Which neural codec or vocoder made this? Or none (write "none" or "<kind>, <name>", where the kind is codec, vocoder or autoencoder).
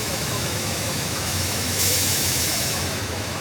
autoencoder, DAC-VAE